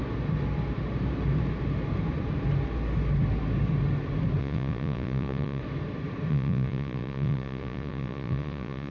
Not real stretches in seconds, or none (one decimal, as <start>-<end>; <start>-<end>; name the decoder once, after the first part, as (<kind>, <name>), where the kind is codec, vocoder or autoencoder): 4.4-5.6 (vocoder, Vocos); 6.3-8.9